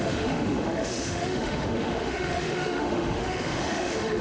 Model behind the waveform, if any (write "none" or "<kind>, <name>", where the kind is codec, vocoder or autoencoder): autoencoder, DAC-VAE